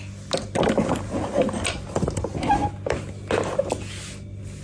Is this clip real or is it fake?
real